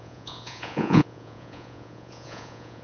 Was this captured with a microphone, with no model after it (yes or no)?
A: no